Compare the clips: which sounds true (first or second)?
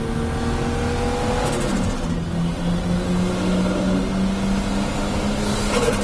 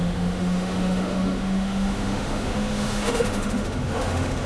first